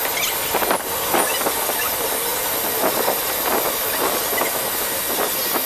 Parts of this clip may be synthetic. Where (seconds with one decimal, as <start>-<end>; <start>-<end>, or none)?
none